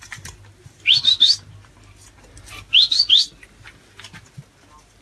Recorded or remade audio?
recorded